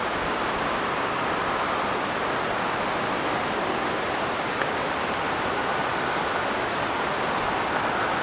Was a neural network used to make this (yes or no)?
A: no